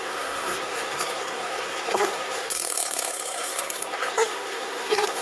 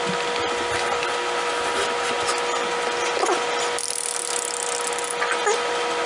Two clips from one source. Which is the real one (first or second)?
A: second